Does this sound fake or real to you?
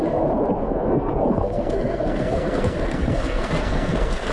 fake